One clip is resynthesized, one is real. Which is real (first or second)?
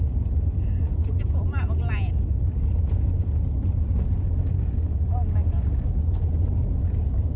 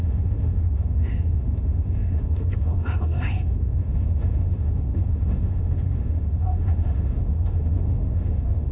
first